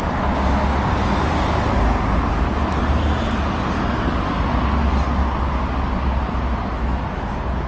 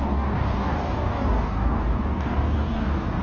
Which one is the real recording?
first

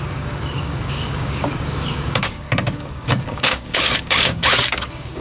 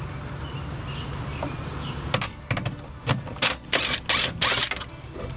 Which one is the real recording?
second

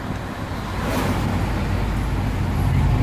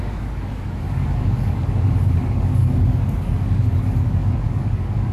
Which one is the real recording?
first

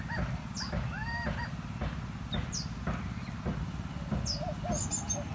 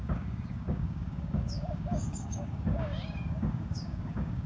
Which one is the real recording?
first